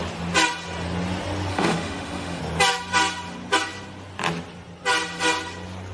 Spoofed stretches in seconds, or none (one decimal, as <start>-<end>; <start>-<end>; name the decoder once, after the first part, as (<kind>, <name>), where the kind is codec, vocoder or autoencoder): 1.5-2.4 (autoencoder, DAC-VAE)